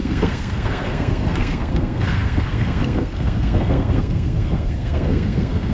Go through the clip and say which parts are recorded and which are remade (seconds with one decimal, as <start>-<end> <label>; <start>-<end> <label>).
0.0-5.7 remade